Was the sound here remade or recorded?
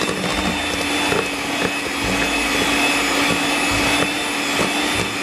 recorded